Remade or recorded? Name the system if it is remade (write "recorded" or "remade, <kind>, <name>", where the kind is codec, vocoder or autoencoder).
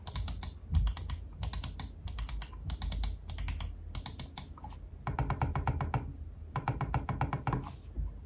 recorded